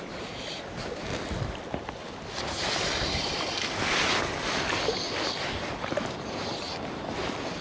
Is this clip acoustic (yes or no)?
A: yes